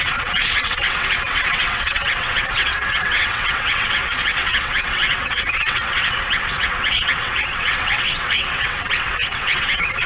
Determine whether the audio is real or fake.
fake